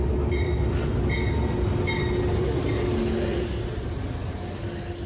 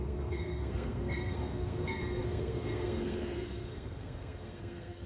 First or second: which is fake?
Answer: second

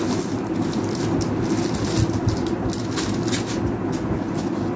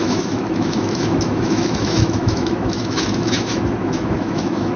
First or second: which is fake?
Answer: second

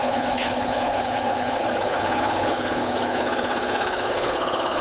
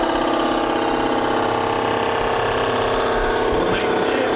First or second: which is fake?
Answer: first